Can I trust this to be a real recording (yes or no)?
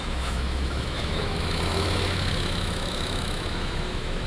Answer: no